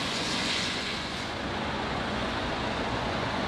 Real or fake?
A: fake